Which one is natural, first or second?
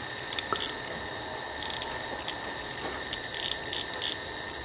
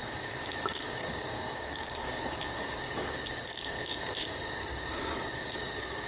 first